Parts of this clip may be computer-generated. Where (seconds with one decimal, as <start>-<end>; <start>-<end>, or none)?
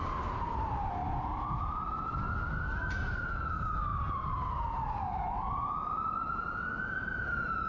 none